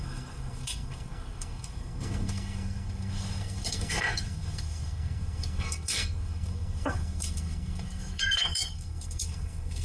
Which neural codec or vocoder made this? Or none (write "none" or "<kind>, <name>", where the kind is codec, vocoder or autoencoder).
codec, SNAC